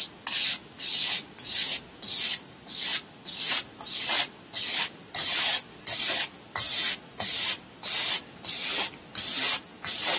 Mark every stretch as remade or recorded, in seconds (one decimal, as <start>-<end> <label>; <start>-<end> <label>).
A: 0.0-10.2 recorded